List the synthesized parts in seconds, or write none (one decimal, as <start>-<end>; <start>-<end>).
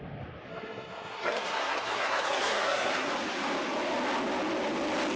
0.5-3.1